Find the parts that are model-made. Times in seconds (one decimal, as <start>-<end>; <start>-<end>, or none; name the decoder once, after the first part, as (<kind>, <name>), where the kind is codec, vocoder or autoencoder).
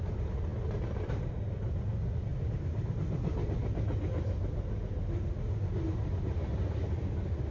none